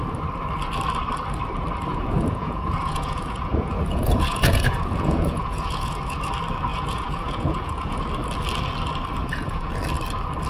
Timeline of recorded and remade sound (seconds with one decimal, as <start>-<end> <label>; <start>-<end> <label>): 0.0-1.9 recorded; 1.9-6.3 remade; 6.3-6.7 recorded; 6.7-8.0 remade; 8.0-9.2 recorded; 9.2-9.8 remade; 9.8-10.5 recorded